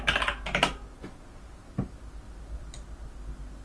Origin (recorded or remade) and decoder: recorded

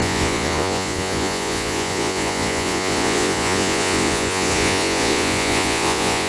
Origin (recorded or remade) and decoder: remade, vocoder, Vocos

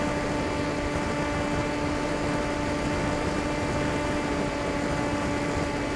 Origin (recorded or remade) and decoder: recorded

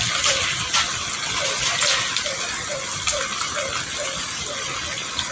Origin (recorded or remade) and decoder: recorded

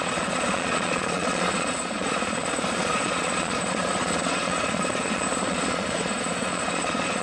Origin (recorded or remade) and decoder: remade, vocoder, Vocos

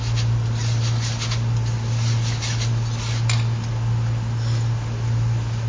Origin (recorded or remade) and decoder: recorded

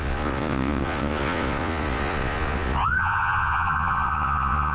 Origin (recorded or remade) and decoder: remade, vocoder, Vocos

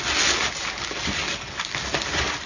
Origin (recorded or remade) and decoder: recorded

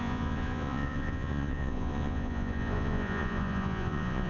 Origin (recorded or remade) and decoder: remade, vocoder, Vocos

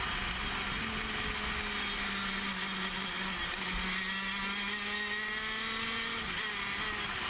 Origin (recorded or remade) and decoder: recorded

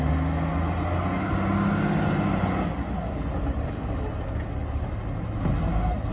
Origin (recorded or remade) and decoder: recorded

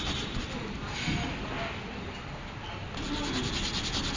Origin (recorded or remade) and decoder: recorded